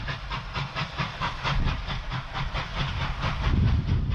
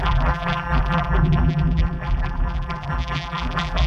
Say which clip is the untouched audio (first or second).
first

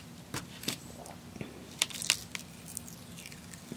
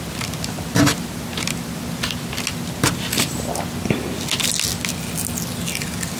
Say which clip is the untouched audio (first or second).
second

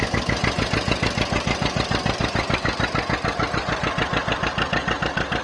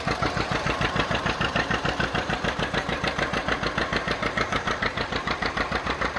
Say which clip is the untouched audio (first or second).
first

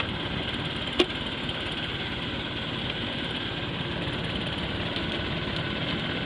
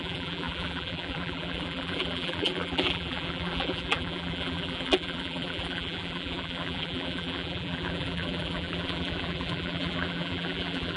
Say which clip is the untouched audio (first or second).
first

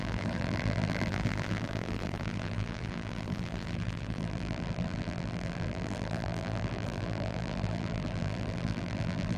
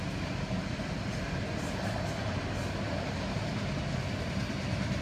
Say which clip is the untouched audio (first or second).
second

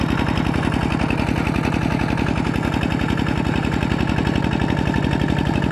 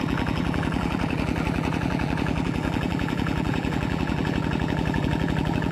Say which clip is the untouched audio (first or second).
first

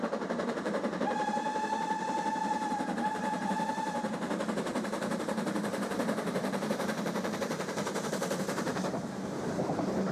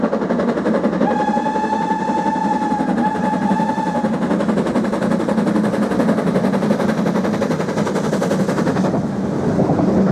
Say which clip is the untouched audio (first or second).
second